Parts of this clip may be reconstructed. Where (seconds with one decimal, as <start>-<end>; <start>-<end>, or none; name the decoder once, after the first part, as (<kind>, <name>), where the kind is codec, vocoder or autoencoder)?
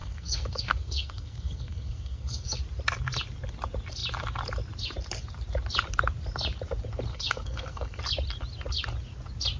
0.0-2.6 (codec, SNAC); 7.1-8.0